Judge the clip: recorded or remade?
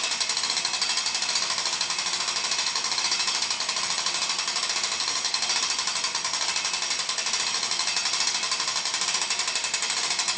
recorded